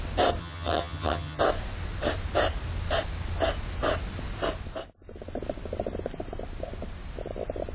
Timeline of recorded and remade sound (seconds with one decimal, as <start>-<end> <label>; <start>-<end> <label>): 0.0-0.4 recorded; 0.4-1.4 remade; 1.4-7.7 recorded

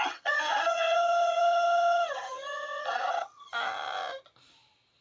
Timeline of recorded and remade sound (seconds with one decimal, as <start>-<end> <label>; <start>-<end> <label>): 0.0-3.5 remade; 3.5-5.0 recorded

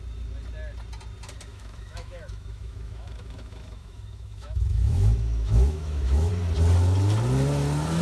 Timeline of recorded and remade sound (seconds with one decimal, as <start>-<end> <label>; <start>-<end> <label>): 0.0-1.5 recorded; 1.5-6.3 remade; 6.3-8.0 recorded

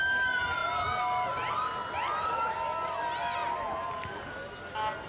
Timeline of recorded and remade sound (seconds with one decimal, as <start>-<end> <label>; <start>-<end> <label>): 0.0-5.1 recorded

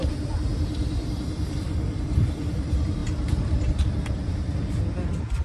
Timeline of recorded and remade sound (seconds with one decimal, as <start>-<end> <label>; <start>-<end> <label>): 0.0-4.3 remade; 4.3-5.4 recorded

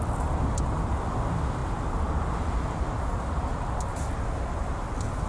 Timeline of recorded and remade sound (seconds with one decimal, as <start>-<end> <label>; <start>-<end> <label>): 0.0-5.3 recorded